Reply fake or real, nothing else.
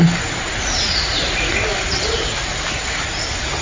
real